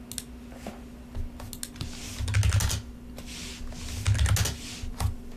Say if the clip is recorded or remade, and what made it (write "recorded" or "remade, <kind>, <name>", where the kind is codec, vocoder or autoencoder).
recorded